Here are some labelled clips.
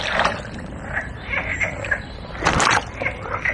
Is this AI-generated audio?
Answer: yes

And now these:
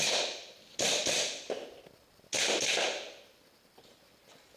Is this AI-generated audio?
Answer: no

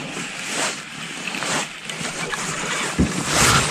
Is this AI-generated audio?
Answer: no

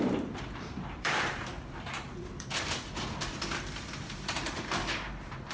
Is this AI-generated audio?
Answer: yes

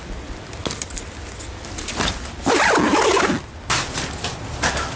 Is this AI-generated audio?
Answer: no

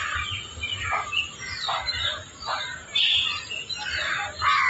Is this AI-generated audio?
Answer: yes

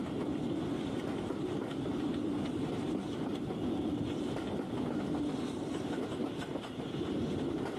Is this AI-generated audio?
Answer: no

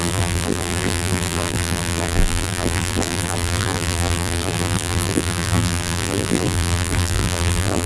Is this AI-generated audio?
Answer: yes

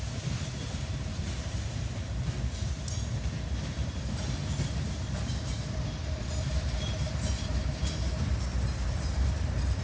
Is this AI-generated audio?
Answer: yes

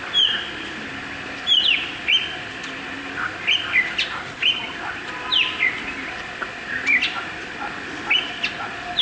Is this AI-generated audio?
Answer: no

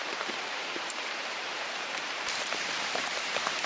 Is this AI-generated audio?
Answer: yes